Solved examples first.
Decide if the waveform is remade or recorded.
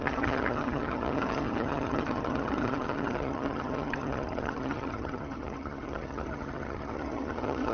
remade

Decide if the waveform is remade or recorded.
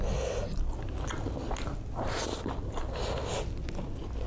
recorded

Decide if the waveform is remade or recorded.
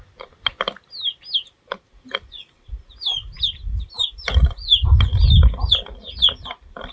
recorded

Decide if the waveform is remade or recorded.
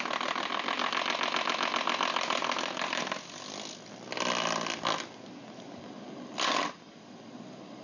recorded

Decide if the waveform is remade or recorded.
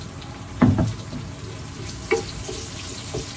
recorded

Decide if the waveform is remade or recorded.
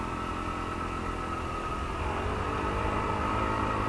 recorded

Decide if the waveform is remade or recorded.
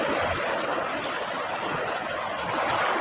recorded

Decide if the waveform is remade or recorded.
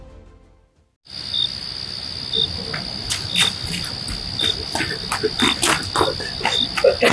recorded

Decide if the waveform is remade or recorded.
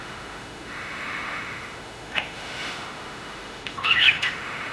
remade